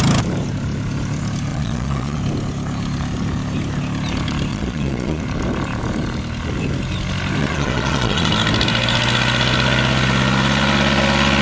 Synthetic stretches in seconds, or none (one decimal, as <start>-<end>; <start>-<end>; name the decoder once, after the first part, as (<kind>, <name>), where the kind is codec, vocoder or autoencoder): 1.5-2.2 (vocoder, Vocos); 4.5-5.2; 7.4-8.3